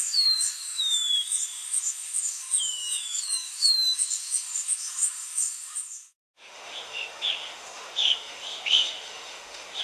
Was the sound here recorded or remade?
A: remade